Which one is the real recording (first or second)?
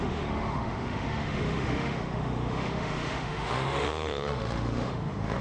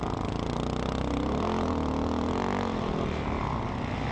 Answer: second